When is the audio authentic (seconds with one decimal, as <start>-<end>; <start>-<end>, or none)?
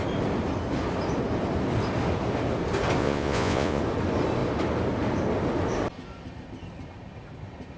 0.0-3.0; 3.8-7.8